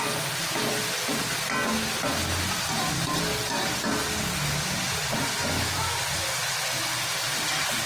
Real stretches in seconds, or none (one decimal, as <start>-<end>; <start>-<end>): 0.0-7.9